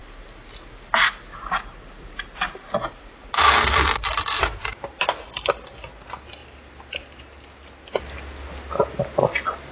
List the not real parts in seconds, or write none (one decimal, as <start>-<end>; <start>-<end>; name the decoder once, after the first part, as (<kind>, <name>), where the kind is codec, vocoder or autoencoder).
none